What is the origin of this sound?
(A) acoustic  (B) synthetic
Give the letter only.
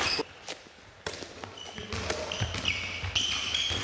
A